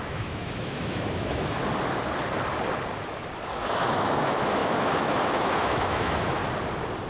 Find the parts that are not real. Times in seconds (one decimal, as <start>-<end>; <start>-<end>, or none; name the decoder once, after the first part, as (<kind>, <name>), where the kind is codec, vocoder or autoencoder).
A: 0.0-1.6 (autoencoder, DAC-VAE); 3.5-6.4